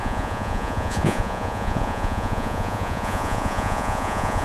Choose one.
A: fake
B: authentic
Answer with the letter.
A